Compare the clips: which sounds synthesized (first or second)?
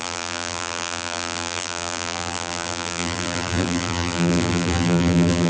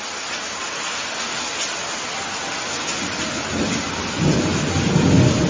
first